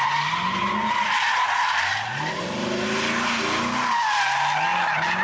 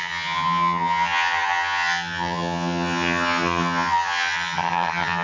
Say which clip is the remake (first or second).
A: second